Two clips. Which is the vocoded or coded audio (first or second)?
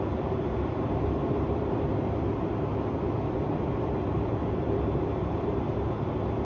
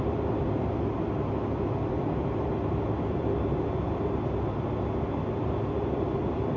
first